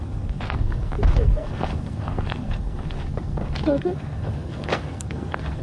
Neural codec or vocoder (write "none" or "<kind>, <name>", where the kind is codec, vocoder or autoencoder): codec, SNAC